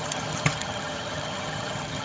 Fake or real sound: fake